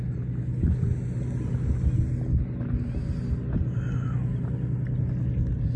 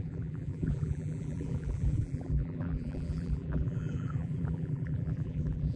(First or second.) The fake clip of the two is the second